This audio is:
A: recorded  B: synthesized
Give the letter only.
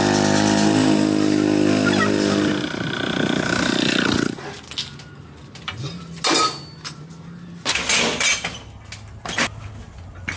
A